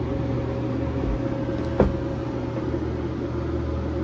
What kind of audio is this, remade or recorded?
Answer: recorded